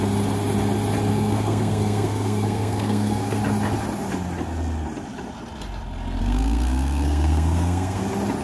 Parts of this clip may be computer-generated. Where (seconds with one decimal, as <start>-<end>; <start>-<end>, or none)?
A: 1.1-3.4; 6.2-8.0